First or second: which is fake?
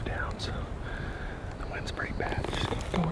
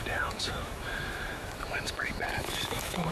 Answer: second